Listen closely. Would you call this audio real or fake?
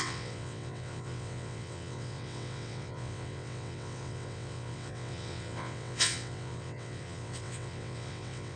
fake